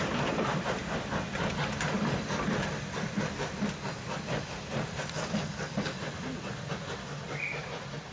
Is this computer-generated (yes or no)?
no